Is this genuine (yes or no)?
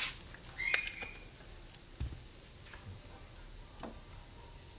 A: yes